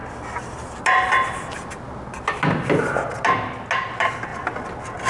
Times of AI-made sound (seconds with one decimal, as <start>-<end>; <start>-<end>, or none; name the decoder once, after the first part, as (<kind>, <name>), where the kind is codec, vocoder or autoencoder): none